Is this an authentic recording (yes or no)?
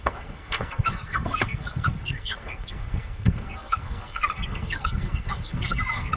no